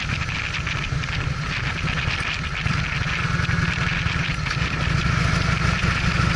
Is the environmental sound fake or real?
real